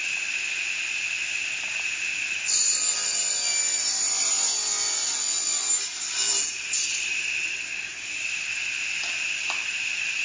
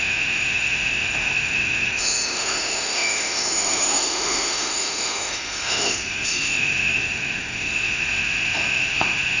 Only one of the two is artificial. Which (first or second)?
second